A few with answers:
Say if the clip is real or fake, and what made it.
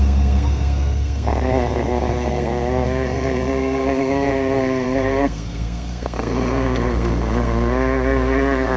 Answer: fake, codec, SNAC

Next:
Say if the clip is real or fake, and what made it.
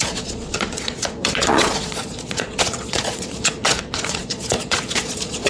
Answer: fake, vocoder, Vocos